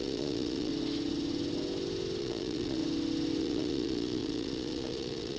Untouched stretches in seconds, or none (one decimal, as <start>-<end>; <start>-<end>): 0.7-2.2; 2.8-3.4